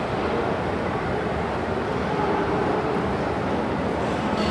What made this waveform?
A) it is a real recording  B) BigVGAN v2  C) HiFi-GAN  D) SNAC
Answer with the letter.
A